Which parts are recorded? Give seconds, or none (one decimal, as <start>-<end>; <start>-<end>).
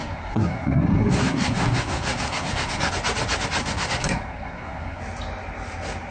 2.9-3.6; 5.0-6.1